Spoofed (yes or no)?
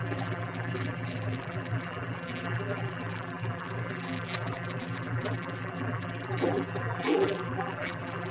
yes